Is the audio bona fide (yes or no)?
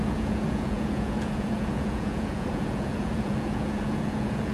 no